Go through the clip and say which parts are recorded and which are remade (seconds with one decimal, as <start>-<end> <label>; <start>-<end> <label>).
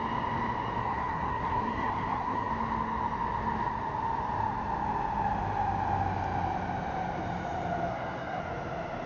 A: 0.0-0.8 recorded; 0.8-2.5 remade; 2.5-7.9 recorded; 7.9-8.4 remade; 8.4-9.1 recorded